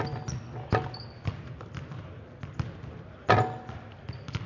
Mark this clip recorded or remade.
recorded